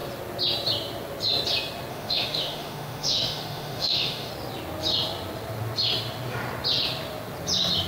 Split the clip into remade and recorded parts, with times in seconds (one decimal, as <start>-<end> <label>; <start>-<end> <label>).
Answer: 0.0-1.9 recorded; 1.9-4.3 remade; 4.3-7.9 recorded